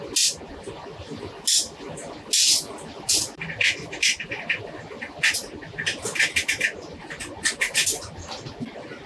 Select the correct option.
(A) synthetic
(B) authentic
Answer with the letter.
B